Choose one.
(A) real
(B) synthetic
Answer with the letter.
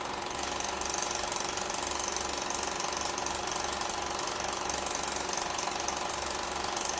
A